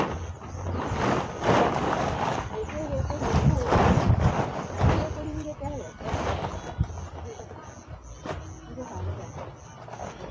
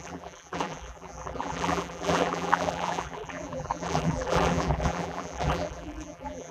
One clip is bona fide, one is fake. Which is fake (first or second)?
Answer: second